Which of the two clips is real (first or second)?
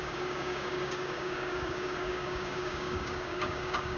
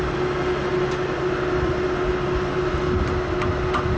second